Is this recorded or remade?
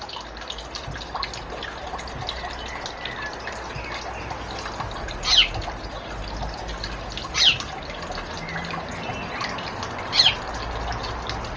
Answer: recorded